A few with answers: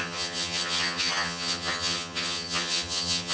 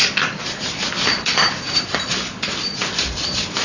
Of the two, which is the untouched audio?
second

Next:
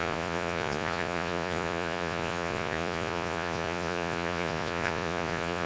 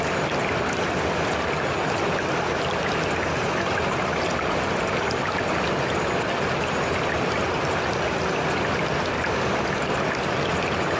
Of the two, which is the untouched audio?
second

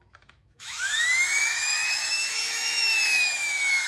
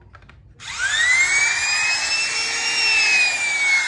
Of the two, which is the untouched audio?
second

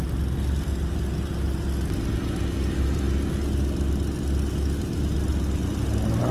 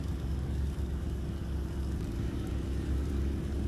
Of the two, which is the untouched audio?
first